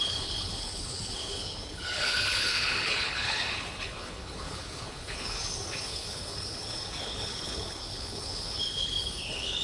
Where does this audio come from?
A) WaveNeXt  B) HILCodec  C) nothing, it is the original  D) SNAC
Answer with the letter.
B